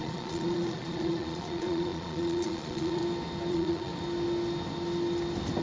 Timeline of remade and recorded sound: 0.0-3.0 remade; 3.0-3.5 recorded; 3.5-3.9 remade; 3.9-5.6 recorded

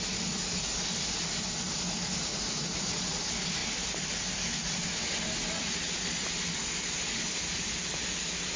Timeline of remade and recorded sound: 0.0-2.3 recorded; 2.3-3.2 remade; 3.2-8.6 recorded

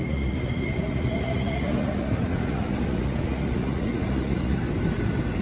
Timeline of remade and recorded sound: 0.0-4.6 remade; 4.6-5.4 recorded

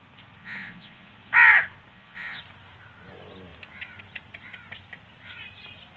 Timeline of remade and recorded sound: 0.0-0.4 recorded; 0.4-1.1 remade; 1.1-1.9 recorded; 1.9-2.4 remade; 2.4-6.0 recorded

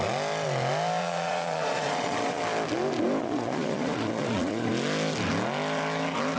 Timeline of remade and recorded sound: 0.0-1.0 recorded; 1.0-2.4 remade; 2.4-3.2 recorded; 3.2-4.7 remade; 4.7-6.4 recorded

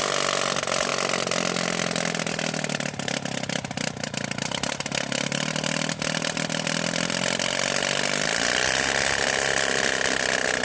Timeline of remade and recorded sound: 0.0-10.6 recorded

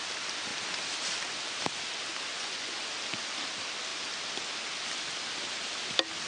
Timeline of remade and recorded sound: 0.0-2.3 recorded; 2.3-2.9 remade; 2.9-6.3 recorded

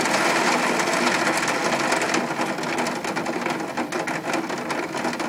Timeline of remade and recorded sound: 0.0-5.3 recorded